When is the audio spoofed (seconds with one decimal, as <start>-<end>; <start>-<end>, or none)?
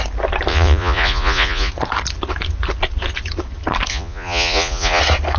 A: 0.5-1.7; 3.9-5.0